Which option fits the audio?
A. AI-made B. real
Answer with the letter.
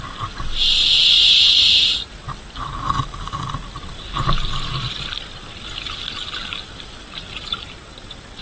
B